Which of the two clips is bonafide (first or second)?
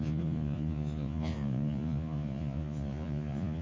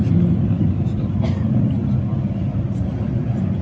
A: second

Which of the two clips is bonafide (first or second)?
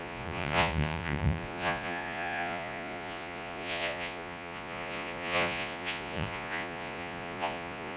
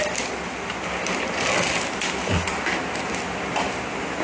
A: second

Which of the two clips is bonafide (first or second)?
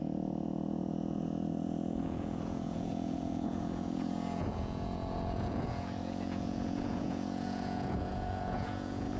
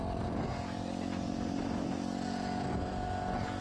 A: second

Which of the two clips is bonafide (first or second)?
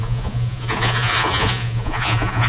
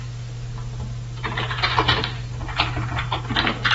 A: second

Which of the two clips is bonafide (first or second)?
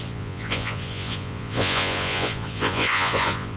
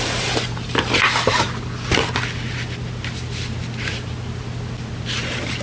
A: second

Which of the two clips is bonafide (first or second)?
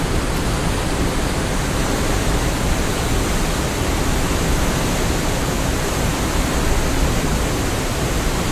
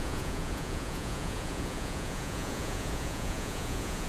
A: first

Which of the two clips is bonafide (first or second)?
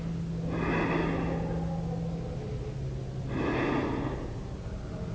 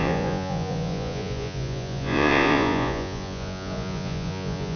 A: first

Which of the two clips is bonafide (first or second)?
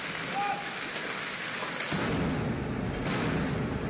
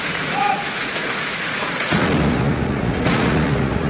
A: first